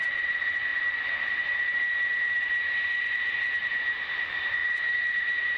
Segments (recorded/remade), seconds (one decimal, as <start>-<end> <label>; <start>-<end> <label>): 0.0-5.6 remade